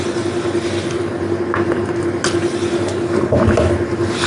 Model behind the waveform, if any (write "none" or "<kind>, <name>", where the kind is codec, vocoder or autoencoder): none